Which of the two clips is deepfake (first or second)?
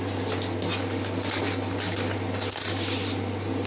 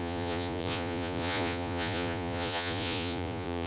second